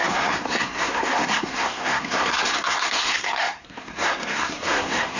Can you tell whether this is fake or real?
fake